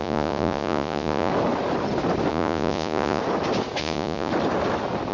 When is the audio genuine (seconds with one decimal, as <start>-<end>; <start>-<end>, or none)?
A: 1.3-2.3; 3.2-3.8; 4.3-5.1